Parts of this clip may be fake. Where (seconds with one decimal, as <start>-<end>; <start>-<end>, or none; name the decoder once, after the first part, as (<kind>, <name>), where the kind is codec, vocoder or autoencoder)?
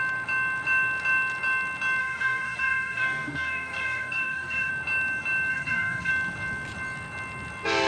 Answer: 2.0-4.7 (codec, SNAC); 5.5-6.1